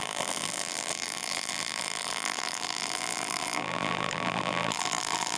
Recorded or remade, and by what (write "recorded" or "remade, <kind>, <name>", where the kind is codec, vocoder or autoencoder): remade, vocoder, BigVGAN v2